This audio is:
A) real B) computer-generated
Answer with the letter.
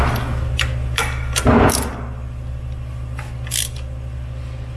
A